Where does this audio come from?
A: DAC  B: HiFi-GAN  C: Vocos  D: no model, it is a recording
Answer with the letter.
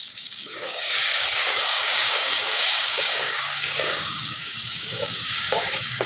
A